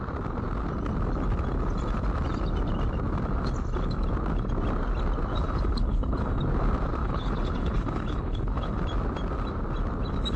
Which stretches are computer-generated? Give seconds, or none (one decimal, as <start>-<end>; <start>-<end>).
5.3-6.4; 7.0-8.8